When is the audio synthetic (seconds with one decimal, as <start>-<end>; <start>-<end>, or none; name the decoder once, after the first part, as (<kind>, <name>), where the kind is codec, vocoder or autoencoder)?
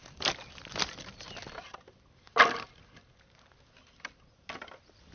none